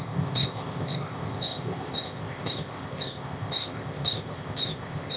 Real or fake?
fake